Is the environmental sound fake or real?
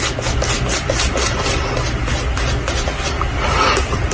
real